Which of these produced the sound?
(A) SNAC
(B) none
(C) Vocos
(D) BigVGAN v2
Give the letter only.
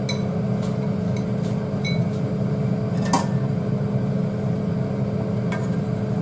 B